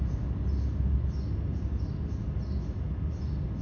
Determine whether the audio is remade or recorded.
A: recorded